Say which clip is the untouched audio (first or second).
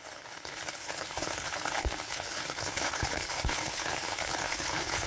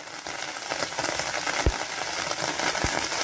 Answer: second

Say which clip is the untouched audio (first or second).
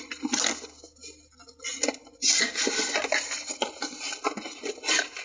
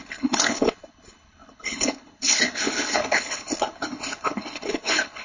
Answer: first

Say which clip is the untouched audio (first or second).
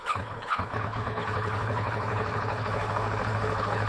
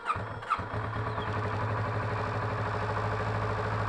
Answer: second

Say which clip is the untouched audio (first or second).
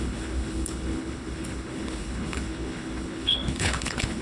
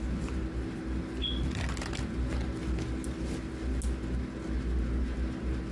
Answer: second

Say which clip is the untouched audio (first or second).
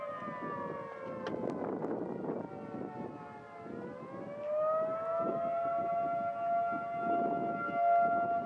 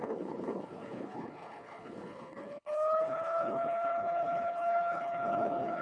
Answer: first